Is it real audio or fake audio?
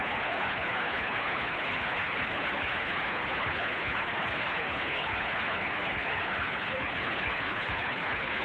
fake